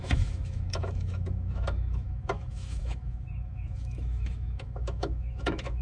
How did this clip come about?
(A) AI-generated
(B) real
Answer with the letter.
A